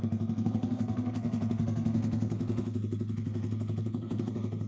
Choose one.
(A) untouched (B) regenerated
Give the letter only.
B